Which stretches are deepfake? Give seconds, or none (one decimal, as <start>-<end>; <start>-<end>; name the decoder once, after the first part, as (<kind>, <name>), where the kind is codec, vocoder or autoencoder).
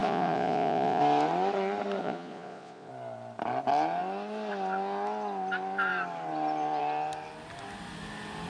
0.0-1.0 (vocoder, Vocos); 2.0-2.9